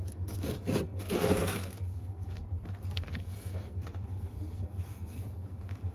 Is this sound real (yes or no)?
no